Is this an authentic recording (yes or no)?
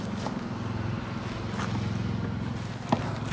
yes